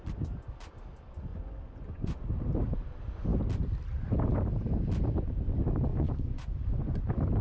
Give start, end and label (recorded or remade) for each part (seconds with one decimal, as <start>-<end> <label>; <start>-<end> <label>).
0.0-1.3 recorded; 1.3-2.2 remade; 2.2-5.9 recorded; 5.9-7.0 remade; 7.0-7.4 recorded